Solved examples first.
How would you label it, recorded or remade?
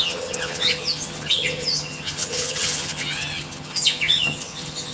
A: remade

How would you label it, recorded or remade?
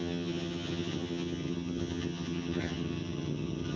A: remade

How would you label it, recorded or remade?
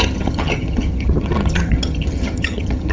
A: remade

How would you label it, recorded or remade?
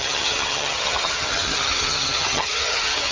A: remade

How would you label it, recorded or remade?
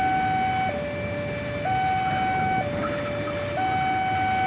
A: recorded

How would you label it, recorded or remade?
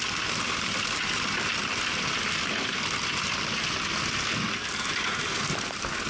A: recorded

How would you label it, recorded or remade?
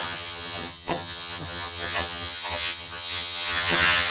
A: remade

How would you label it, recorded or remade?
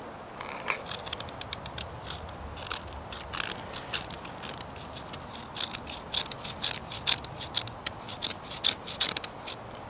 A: recorded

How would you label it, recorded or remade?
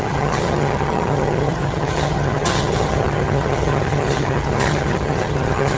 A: remade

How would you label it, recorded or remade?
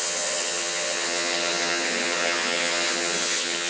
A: remade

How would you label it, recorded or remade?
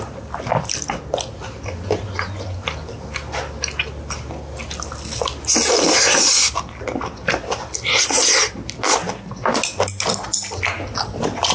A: recorded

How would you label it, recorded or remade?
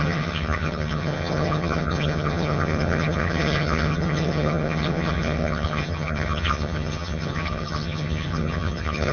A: remade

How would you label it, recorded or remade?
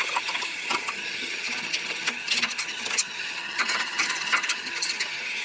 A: remade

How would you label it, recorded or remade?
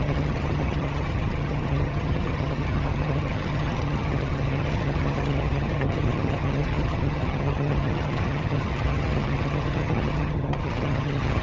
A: remade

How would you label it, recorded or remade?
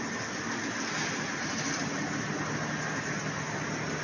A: recorded